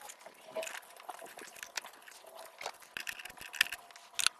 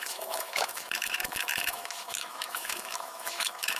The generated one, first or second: second